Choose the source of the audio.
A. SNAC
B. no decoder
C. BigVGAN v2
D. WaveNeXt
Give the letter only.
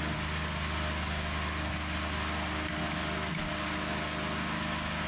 B